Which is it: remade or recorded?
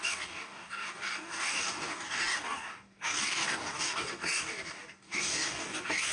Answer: remade